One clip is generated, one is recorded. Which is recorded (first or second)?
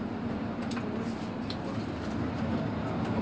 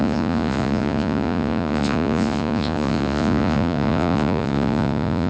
first